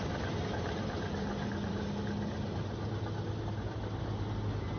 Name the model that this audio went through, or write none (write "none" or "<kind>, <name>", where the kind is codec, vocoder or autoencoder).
none